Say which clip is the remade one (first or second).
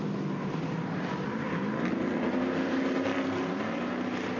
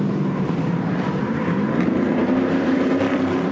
second